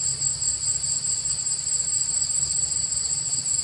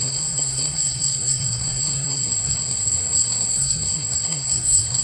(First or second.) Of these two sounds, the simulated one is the second